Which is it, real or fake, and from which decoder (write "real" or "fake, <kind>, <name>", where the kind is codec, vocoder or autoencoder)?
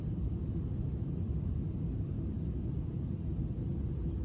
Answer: fake, vocoder, BigVGAN v2